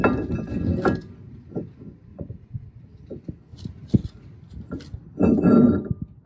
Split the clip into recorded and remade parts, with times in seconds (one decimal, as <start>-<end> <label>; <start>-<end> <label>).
0.0-2.1 recorded; 2.1-2.7 remade; 2.7-6.3 recorded